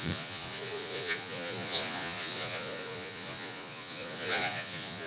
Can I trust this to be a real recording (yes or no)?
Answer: no